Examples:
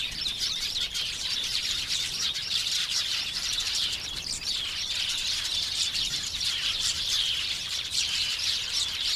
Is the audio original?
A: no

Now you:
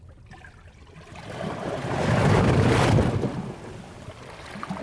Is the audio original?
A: yes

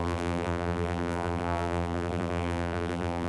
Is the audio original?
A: no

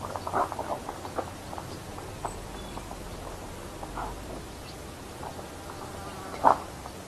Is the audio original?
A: yes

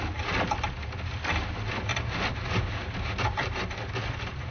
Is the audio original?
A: no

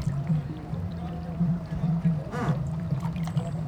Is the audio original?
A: no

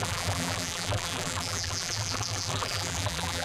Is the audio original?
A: no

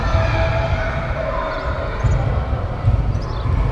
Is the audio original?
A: yes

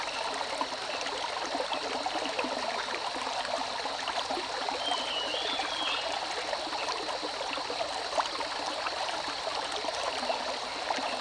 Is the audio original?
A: yes